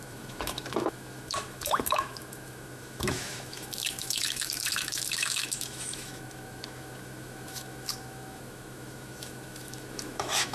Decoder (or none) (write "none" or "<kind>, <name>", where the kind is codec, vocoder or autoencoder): autoencoder, DAC-VAE